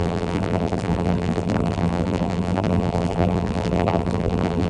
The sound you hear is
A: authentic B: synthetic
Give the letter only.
B